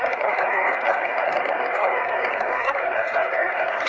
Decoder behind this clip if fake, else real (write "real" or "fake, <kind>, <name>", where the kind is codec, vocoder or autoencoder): fake, codec, SNAC